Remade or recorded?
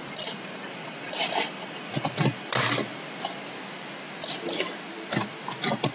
remade